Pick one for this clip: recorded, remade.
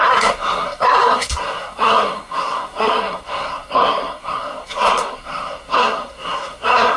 remade